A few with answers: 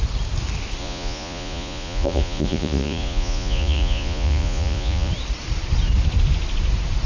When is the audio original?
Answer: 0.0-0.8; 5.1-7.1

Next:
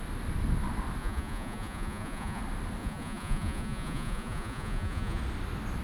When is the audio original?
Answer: 0.0-1.0; 2.4-2.8; 5.2-5.8

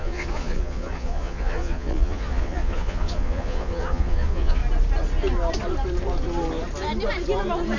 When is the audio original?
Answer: 4.6-7.8